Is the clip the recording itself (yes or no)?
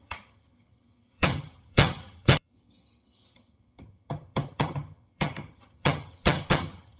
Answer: no